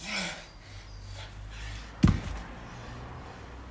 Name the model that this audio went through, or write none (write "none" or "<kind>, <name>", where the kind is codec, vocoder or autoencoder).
none